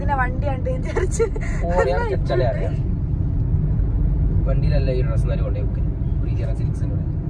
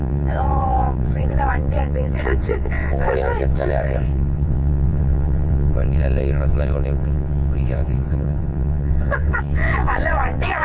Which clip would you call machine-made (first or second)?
second